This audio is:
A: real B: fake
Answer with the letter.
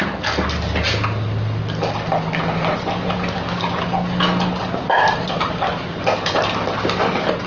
A